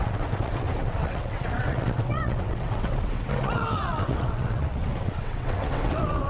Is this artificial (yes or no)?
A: yes